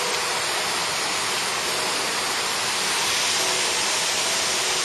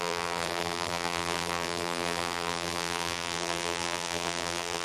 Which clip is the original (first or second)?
first